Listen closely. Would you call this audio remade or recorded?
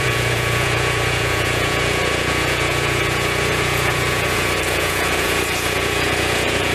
remade